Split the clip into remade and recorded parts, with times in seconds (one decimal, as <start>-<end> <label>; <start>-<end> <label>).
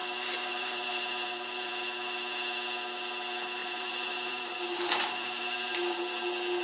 0.0-1.7 remade; 1.7-3.6 recorded; 3.6-6.0 remade; 6.0-6.6 recorded